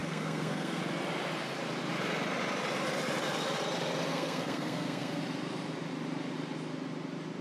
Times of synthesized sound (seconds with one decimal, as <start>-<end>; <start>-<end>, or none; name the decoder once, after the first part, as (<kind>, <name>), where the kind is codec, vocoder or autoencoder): 0.0-0.8 (codec, SNAC); 4.1-5.2